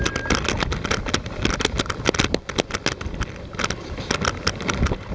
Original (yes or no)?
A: yes